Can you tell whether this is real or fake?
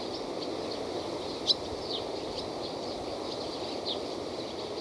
real